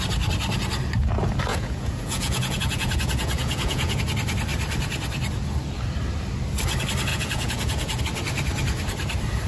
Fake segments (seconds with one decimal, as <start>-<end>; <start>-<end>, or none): 1.5-4.0; 7.1-8.0